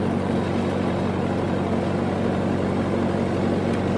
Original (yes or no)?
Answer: yes